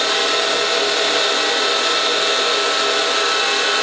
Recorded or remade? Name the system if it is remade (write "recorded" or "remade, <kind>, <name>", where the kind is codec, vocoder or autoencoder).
recorded